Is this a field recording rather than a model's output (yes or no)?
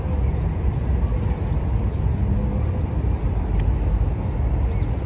yes